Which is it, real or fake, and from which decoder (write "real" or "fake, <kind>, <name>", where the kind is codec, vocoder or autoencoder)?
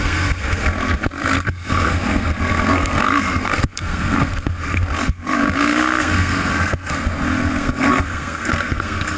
fake, codec, SNAC